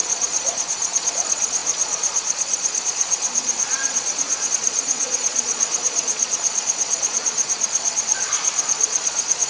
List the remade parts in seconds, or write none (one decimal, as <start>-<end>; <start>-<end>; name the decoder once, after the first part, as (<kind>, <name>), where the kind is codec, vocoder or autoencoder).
0.0-9.5 (vocoder, Vocos)

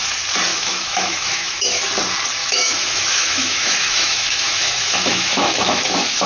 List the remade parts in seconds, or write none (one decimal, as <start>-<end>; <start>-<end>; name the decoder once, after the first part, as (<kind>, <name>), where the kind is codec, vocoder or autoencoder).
0.5-1.8 (autoencoder, DAC-VAE); 2.4-6.3

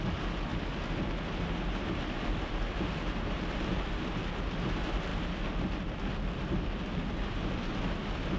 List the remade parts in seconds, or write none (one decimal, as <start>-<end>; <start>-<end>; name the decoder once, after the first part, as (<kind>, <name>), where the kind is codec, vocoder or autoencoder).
none